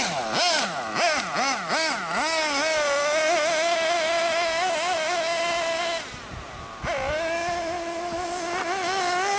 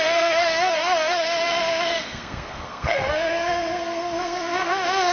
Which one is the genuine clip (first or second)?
first